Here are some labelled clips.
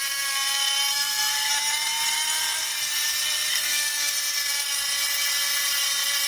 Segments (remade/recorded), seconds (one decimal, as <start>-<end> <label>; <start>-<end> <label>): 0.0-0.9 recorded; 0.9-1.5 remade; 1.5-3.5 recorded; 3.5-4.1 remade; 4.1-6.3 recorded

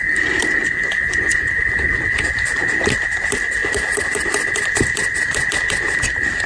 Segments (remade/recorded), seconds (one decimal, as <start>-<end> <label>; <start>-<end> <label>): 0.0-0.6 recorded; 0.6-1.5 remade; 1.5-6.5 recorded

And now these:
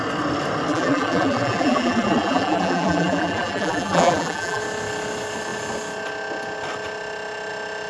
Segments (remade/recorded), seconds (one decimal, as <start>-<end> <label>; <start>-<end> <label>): 0.0-0.7 recorded; 0.7-4.6 remade; 4.6-7.9 recorded

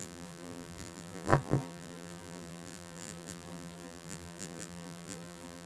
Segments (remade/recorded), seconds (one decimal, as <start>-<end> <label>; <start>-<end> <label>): 0.0-5.7 remade